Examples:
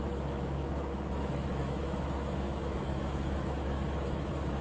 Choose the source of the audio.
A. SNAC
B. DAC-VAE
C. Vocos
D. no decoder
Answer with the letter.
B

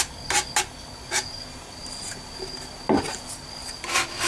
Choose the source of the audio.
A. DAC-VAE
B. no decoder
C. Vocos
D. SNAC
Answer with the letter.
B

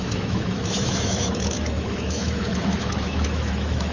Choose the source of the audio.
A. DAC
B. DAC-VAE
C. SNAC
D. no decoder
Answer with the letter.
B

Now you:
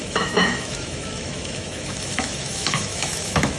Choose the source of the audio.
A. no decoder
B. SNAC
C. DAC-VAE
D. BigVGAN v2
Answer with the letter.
C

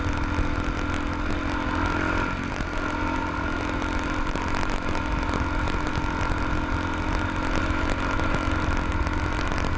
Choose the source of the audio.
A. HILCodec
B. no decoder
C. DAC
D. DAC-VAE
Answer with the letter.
B